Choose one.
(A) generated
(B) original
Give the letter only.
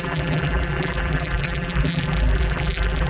A